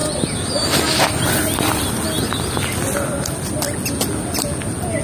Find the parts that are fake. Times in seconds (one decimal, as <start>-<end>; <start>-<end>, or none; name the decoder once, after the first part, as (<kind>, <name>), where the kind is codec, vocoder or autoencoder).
0.0-1.8 (vocoder, BigVGAN v2)